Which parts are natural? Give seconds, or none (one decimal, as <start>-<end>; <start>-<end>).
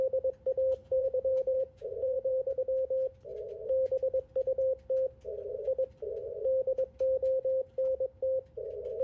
0.0-0.8; 2.6-9.0